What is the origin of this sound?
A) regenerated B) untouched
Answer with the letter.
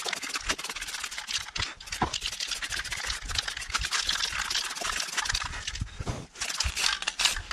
B